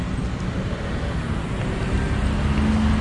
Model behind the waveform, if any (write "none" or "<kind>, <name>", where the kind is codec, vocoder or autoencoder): none